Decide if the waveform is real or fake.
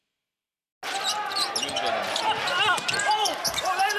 real